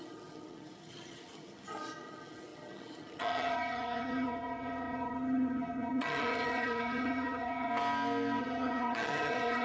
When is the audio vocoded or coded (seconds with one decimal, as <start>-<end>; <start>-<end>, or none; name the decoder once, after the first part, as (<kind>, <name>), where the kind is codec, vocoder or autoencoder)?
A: 0.0-7.7 (vocoder, HiFi-GAN); 8.4-9.6